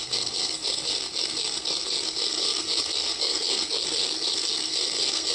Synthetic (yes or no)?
yes